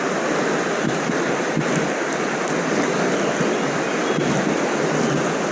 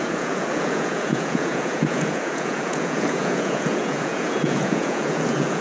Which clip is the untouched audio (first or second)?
first